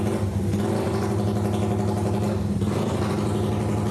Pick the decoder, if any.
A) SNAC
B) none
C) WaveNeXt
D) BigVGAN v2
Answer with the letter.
B